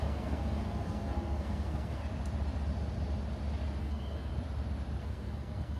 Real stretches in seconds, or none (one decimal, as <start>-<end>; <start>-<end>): 2.0-3.8; 4.3-5.0